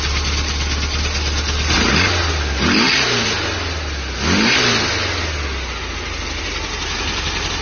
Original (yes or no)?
yes